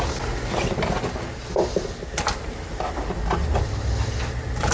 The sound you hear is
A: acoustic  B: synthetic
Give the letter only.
A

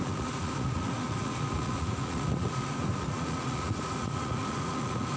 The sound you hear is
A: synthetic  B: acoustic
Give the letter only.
A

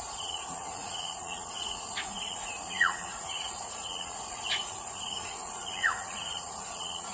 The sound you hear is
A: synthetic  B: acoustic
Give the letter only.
A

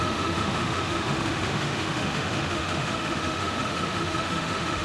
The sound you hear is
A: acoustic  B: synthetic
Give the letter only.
B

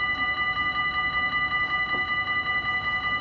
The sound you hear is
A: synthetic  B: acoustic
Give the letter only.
B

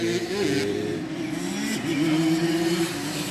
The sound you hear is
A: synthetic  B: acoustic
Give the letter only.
B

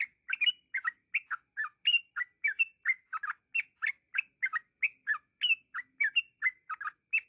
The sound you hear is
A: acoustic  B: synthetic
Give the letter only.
A